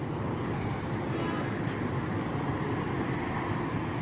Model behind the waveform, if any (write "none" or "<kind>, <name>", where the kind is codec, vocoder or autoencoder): none